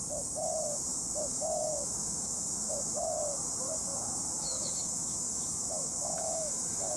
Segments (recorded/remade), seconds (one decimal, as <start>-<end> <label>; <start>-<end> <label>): 0.0-0.9 recorded; 0.9-3.0 remade; 3.0-3.9 recorded; 3.9-7.0 remade